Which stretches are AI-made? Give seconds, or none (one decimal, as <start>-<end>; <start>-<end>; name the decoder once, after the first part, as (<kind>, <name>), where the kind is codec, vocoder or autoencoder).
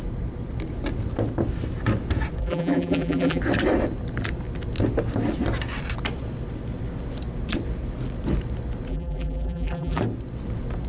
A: 2.4-3.4 (vocoder, BigVGAN v2); 8.9-10.0